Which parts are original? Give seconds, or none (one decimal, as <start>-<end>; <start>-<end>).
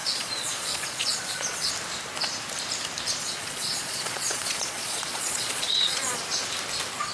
1.7-3.2; 6.2-7.1